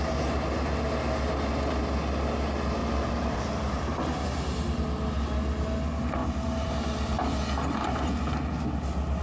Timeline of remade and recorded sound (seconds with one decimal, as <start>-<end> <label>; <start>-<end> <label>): 0.0-2.8 recorded; 2.8-3.9 remade; 3.9-6.2 recorded; 6.2-6.7 remade; 6.7-9.2 recorded